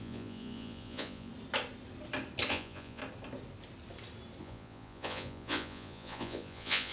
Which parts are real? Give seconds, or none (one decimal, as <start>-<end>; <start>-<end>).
1.3-2.5; 3.0-4.4